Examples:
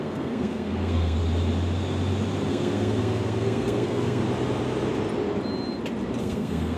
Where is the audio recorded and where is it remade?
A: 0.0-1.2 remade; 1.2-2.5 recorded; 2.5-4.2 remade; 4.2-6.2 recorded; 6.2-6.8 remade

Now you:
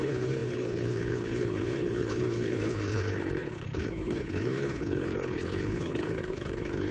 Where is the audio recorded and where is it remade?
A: 0.0-6.9 remade

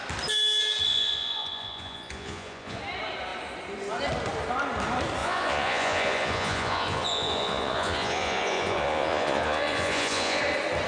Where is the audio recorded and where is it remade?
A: 0.0-0.9 recorded; 0.9-2.8 remade; 2.8-5.2 recorded; 5.2-10.4 remade; 10.4-10.9 recorded

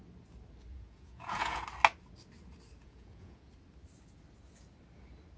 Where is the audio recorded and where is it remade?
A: 0.0-0.7 recorded; 0.7-1.6 remade; 1.6-2.8 recorded; 2.8-3.5 remade; 3.5-5.4 recorded

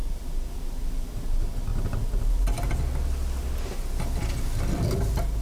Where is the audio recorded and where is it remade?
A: 0.0-5.4 recorded

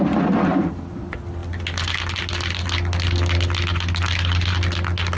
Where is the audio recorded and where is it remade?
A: 0.0-5.2 recorded

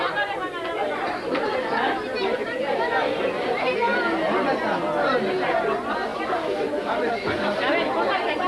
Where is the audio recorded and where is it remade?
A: 0.0-0.8 recorded; 0.8-2.6 remade; 2.6-8.5 recorded

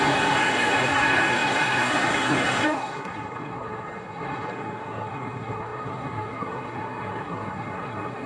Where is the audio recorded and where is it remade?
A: 0.0-8.3 remade